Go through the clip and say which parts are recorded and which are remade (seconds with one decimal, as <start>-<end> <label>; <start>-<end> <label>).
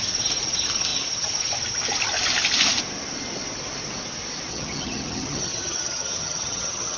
0.0-4.5 recorded; 4.5-7.0 remade